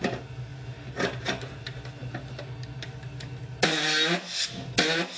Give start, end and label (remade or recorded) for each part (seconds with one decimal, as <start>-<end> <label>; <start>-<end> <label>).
0.0-5.2 recorded